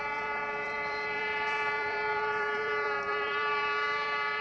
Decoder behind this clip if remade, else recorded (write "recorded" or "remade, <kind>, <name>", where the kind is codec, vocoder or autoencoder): remade, vocoder, BigVGAN v2